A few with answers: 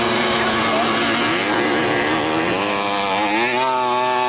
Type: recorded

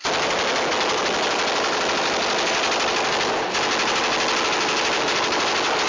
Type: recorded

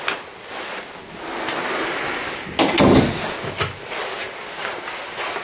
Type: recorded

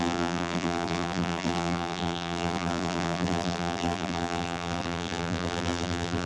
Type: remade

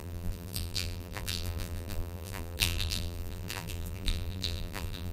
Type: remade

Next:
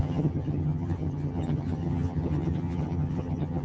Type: remade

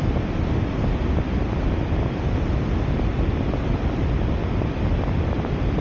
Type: recorded